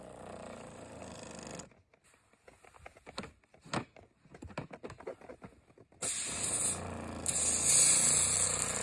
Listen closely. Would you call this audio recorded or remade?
recorded